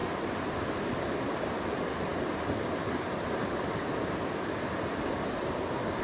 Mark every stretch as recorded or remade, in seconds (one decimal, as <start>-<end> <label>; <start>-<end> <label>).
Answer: 0.0-6.0 recorded